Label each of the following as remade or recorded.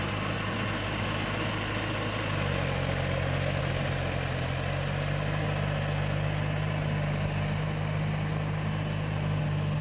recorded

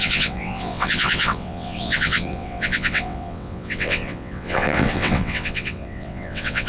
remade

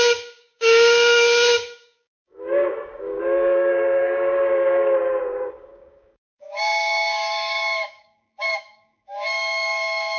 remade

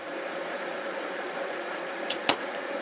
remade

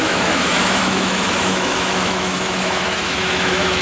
remade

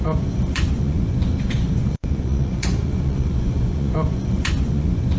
remade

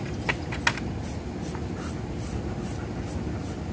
recorded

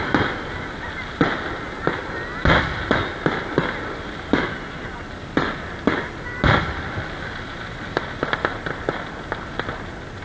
recorded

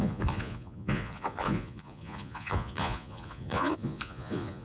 remade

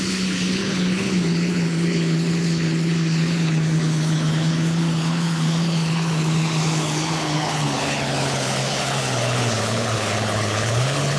remade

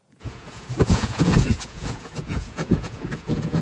remade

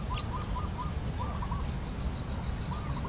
recorded